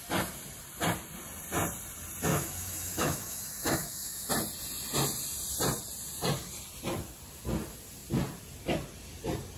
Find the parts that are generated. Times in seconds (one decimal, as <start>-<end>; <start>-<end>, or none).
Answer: 2.3-4.3